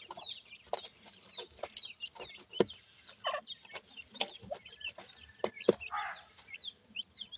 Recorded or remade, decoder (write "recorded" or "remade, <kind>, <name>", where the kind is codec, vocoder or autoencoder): recorded